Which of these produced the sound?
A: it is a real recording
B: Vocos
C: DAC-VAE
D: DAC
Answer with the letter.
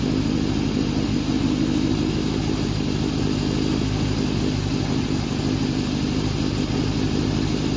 A